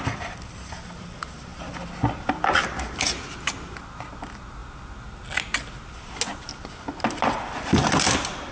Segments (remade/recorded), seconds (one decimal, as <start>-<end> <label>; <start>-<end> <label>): 0.0-8.5 recorded